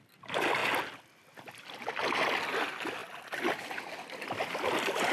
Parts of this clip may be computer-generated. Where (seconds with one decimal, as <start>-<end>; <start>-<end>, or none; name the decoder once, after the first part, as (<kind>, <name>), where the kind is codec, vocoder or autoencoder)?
none